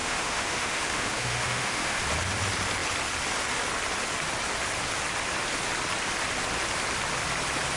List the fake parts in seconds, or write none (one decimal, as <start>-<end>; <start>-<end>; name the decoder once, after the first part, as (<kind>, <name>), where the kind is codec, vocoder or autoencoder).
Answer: 0.0-2.0 (autoencoder, DAC-VAE)

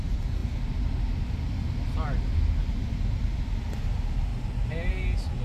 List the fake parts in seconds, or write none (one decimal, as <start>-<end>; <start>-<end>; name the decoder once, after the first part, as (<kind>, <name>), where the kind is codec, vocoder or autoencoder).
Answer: none

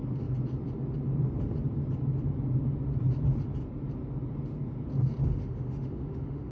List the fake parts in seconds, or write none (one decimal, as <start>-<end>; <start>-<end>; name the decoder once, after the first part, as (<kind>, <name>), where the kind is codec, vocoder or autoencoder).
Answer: 5.3-6.5 (autoencoder, DAC-VAE)

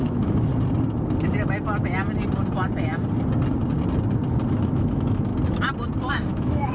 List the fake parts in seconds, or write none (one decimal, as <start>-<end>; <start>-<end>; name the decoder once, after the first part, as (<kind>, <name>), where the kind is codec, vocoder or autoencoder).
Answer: 0.0-0.5 (autoencoder, DAC-VAE); 4.5-5.3; 6.1-6.7

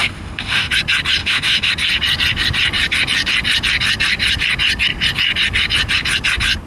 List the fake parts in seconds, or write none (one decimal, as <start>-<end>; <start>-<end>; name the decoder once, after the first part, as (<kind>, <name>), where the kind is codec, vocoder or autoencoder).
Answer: 0.0-0.7 (autoencoder, DAC-VAE); 1.2-1.7

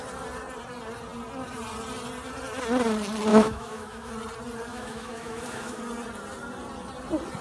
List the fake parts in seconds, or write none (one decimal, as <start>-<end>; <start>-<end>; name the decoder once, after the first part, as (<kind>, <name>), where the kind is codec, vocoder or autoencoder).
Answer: 3.3-4.1 (autoencoder, DAC-VAE); 4.7-5.8

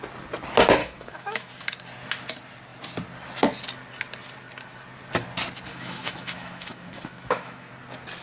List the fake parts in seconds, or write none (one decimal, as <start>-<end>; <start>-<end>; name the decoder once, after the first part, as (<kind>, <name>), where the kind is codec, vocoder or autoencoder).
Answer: 0.8-1.5 (autoencoder, DAC-VAE); 5.7-7.7